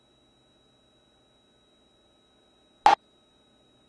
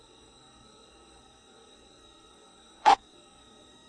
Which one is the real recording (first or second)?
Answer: first